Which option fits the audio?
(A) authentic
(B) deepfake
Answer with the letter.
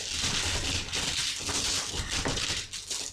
A